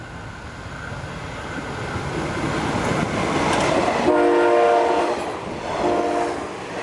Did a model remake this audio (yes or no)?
no